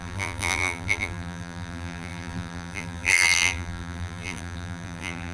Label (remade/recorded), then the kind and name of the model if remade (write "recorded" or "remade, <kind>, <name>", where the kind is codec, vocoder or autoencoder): remade, vocoder, BigVGAN v2